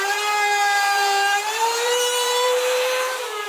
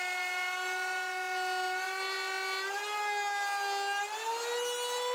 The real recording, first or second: second